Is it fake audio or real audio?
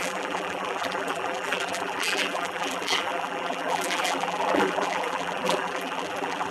fake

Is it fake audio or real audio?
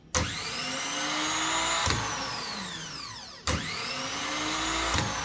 real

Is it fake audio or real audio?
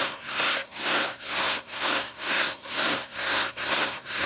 fake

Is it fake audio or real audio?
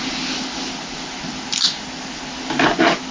real